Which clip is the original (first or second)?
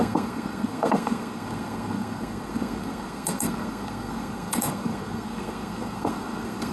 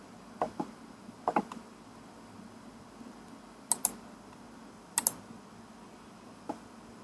second